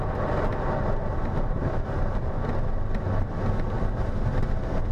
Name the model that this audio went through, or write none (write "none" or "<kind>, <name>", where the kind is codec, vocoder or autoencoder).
none